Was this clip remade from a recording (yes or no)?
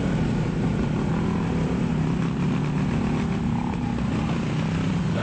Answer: no